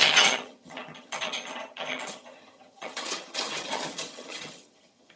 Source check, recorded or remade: remade